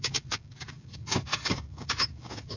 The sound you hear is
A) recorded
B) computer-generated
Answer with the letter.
B